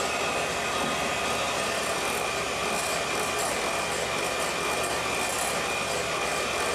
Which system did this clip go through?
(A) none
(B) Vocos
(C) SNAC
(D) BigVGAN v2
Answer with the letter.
A